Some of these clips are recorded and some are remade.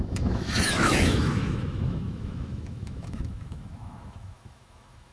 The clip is remade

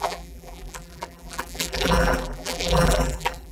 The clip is remade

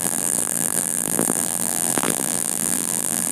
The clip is remade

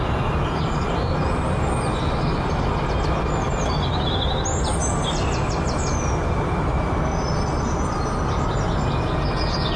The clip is recorded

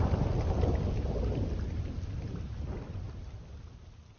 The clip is recorded